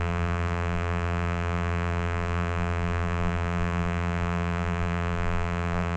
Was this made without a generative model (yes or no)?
no